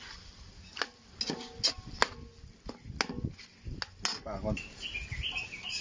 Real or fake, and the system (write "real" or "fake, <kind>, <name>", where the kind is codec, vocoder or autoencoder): real